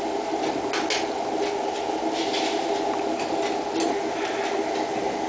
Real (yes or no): yes